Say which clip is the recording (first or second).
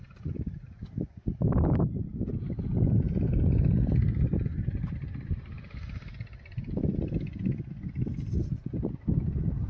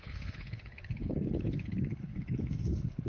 first